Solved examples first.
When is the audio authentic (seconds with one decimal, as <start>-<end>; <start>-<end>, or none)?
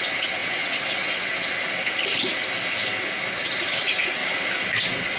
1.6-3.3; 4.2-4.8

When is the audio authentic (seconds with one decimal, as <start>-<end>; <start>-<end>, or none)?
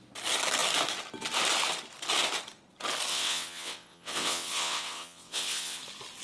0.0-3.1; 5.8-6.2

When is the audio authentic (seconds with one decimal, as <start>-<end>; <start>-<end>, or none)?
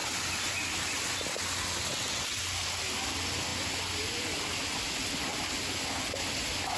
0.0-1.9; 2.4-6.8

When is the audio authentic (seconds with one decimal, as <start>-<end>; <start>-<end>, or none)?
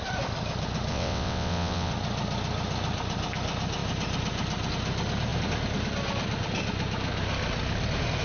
0.0-0.9; 1.9-8.2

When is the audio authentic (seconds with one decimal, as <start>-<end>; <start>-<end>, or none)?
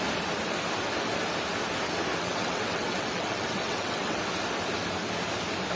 0.0-2.2; 4.2-5.8